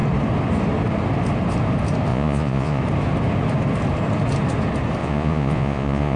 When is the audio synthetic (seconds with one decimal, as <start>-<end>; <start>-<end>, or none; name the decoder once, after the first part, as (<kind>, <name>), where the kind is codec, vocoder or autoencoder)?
2.1-2.8 (vocoder, Vocos); 5.0-6.2